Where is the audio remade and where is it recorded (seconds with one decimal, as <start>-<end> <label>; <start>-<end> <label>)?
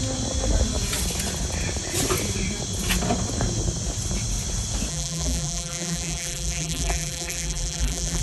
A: 0.0-4.9 recorded; 4.9-8.2 remade